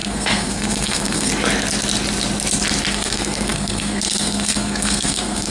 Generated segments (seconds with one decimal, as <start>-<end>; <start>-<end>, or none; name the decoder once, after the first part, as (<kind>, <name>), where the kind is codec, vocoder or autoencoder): 0.0-1.3 (codec, SNAC); 2.9-5.5